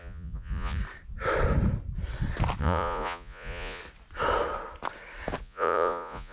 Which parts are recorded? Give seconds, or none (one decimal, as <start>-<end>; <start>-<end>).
0.8-2.6; 3.8-5.4